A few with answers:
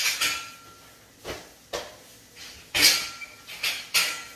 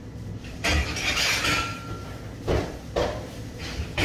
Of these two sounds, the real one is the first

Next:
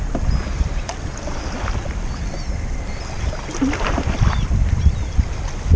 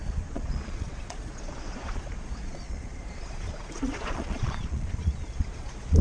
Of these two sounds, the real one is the first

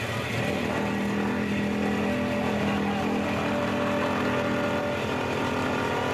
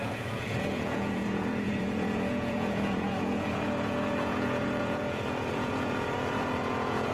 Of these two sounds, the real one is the first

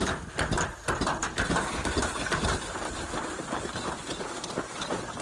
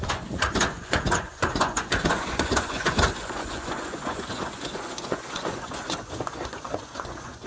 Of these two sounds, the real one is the first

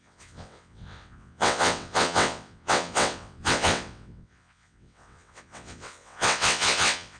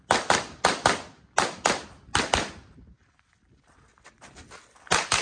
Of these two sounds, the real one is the second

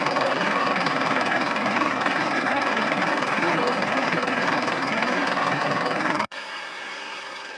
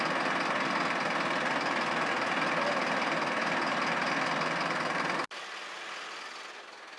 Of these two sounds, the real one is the second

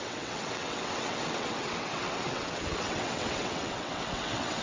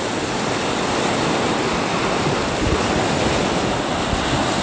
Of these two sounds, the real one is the second